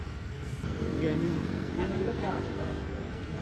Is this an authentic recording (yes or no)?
no